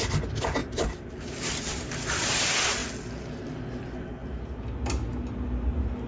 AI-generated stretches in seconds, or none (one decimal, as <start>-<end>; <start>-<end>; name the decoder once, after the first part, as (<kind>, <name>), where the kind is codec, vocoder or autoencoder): 0.6-2.4 (vocoder, BigVGAN v2); 2.8-3.5